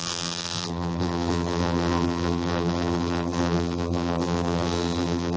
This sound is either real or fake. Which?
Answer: fake